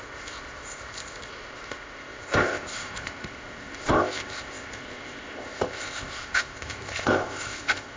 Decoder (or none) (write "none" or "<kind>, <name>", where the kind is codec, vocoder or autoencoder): codec, ZipCodec